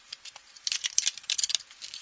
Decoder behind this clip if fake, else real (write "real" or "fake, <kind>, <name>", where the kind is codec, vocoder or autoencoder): fake, vocoder, BigVGAN v2